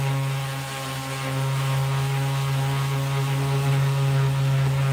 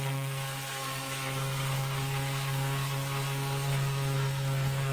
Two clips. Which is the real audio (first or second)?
first